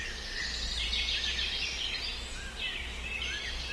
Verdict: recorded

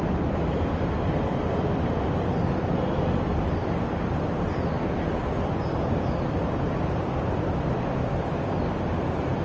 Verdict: remade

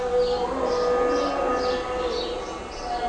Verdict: recorded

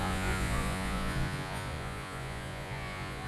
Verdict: remade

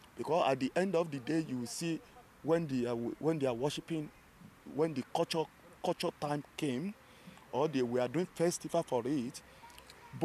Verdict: recorded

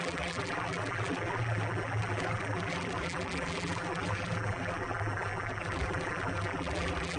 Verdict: remade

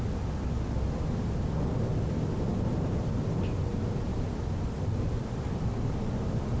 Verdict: recorded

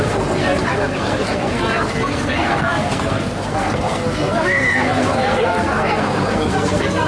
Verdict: remade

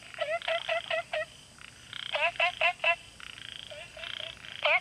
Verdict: recorded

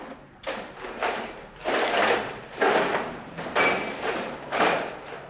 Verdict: recorded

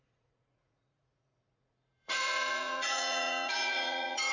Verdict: remade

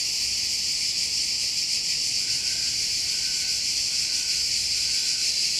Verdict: recorded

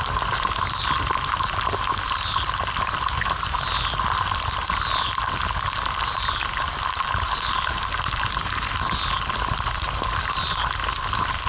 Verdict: recorded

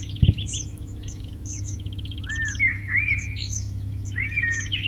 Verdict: remade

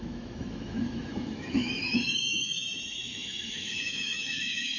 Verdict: remade